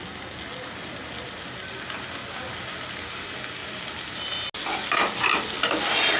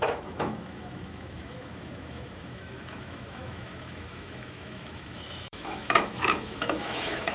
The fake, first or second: second